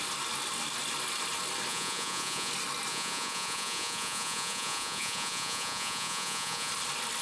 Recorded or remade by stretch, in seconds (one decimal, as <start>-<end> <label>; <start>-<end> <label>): 0.0-1.7 recorded; 1.7-2.5 remade; 2.5-2.9 recorded; 2.9-6.7 remade; 6.7-7.2 recorded